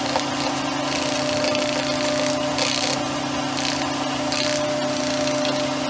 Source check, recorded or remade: recorded